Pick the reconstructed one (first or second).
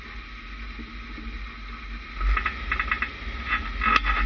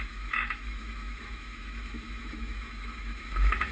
second